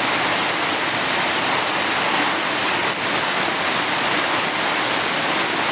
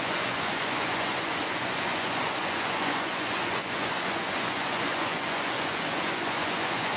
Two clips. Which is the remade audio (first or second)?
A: second